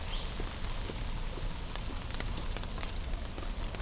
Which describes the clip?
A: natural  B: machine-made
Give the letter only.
A